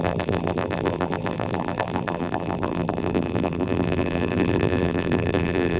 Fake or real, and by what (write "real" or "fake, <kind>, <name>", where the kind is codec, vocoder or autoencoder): fake, vocoder, BigVGAN v2